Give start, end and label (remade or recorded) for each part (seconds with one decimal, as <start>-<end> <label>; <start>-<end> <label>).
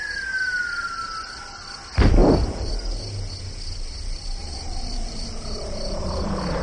0.0-2.2 recorded; 2.2-2.7 remade; 2.7-4.4 recorded; 4.4-5.3 remade; 5.3-6.6 recorded